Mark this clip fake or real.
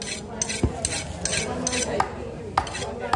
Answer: real